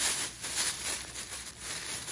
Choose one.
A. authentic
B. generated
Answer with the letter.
B